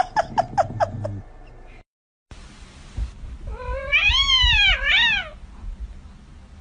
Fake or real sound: real